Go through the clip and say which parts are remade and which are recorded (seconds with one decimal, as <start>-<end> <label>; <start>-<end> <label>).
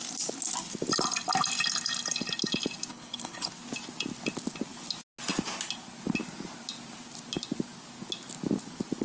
0.0-2.9 recorded; 2.9-3.5 remade; 3.5-9.0 recorded